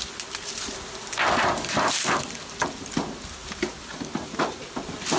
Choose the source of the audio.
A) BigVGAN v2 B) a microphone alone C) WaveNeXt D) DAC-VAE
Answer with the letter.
B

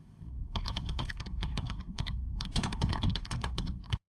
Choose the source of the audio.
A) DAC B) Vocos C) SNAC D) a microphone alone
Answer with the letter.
C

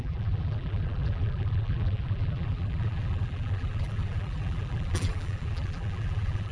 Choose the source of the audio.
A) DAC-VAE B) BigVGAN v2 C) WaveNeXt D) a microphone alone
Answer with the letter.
B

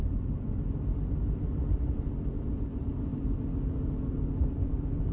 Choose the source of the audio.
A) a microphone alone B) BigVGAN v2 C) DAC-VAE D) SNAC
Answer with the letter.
A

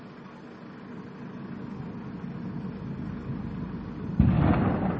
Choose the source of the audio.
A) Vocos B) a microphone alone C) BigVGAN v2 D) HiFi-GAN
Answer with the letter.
B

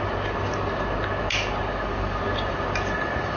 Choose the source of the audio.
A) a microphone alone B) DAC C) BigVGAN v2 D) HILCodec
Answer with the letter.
A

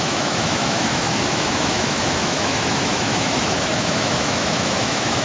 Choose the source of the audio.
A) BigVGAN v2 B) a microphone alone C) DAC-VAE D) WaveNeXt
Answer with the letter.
C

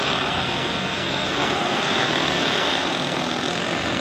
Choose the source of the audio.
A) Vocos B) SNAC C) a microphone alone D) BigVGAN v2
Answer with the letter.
B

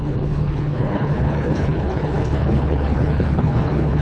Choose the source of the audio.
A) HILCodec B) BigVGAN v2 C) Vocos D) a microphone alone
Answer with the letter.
A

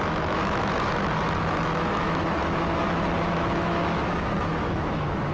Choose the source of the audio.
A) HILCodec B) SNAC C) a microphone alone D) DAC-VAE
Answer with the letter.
D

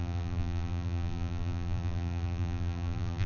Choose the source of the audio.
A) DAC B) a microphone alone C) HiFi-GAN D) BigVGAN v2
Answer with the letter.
D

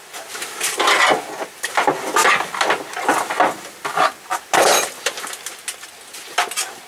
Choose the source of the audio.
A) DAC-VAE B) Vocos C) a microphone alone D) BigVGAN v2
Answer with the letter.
C